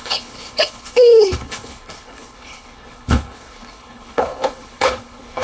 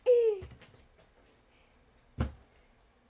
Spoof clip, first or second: first